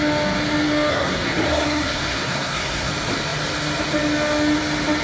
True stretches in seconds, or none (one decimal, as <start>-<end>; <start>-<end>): 0.0-0.9; 2.9-5.0